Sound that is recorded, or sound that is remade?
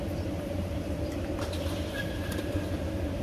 recorded